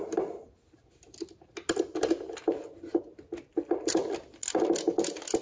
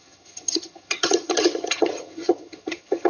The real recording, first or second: first